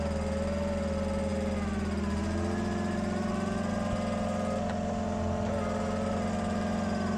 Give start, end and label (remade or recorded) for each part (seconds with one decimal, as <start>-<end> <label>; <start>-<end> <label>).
0.0-7.2 recorded